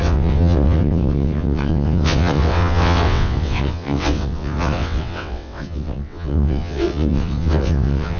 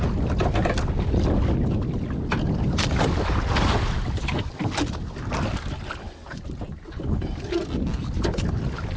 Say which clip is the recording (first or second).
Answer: second